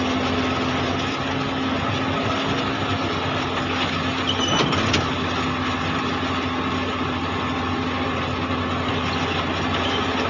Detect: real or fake real